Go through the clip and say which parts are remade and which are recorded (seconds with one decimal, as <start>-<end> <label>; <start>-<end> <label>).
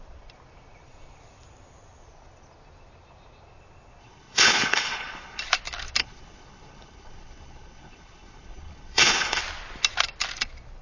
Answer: 0.0-4.0 recorded; 4.0-5.4 remade; 5.4-6.0 recorded; 6.0-9.4 remade; 9.4-10.8 recorded